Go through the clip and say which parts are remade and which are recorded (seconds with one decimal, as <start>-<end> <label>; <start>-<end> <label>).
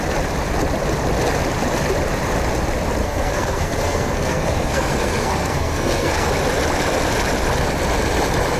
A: 0.0-3.0 recorded; 3.0-6.3 remade; 6.3-8.6 recorded